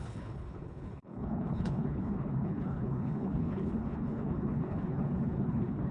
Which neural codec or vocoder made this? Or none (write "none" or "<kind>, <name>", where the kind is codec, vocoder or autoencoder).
codec, HILCodec